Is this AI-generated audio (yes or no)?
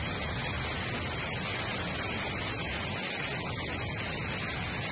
no